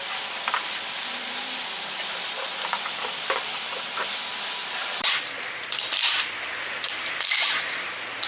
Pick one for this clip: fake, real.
fake